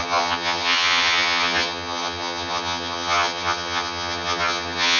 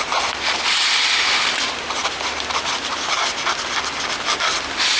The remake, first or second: first